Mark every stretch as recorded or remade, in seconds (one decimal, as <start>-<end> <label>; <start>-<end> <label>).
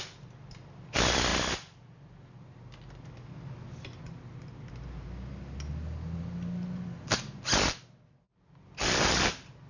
0.0-9.7 recorded